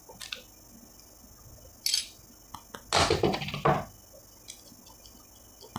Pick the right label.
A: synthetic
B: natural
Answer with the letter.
B